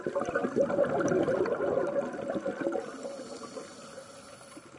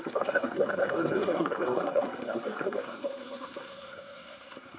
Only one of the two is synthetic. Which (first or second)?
second